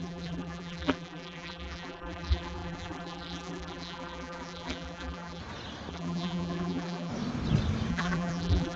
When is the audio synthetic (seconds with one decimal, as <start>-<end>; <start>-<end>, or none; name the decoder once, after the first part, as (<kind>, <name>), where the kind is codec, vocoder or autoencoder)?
0.0-5.4 (vocoder, BigVGAN v2); 5.9-7.1; 7.9-8.8